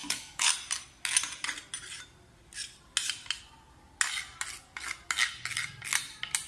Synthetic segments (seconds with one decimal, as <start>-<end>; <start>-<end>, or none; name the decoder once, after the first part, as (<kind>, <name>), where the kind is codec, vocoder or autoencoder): 0.0-0.5 (codec, DAC)